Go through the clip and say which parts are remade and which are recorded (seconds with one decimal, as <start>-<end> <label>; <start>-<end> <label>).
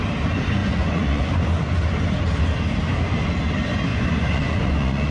0.0-0.6 recorded; 0.6-1.3 remade; 1.3-3.9 recorded; 3.9-5.1 remade